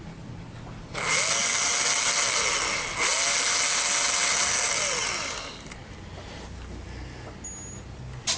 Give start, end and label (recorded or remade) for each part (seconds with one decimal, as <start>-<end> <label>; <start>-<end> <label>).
0.0-8.4 recorded